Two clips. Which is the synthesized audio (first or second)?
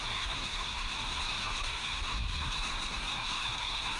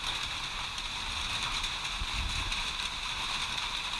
first